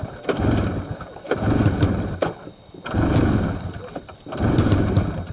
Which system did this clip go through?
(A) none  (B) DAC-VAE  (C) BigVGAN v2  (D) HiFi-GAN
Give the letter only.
C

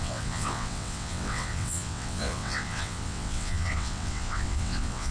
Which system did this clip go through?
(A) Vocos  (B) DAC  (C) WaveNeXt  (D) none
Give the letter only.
C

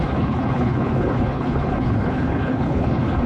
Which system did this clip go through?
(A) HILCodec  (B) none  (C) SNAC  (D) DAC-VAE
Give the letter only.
A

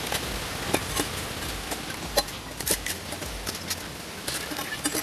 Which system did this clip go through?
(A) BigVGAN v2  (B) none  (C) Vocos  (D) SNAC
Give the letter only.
B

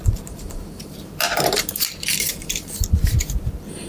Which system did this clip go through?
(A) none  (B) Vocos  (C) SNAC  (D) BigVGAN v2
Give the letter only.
D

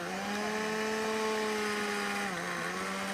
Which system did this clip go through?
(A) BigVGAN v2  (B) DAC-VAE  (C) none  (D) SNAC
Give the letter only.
C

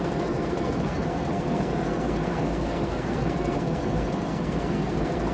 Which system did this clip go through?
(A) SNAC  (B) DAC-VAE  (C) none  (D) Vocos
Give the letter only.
A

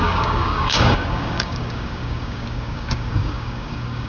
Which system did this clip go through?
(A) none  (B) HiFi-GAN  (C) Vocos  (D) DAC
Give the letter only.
D